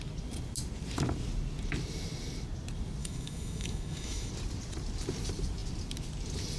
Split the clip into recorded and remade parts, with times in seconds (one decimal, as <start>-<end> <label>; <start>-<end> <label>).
0.0-3.0 recorded; 3.0-4.3 remade; 4.3-6.6 recorded